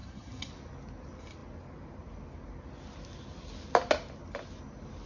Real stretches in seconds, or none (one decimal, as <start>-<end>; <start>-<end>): 0.5-5.1